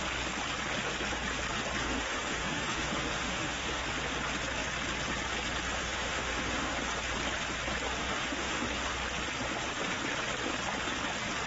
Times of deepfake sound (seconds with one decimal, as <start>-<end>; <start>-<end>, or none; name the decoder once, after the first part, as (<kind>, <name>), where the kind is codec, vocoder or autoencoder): 1.8-3.8 (autoencoder, DAC-VAE); 5.8-6.7; 8.0-8.9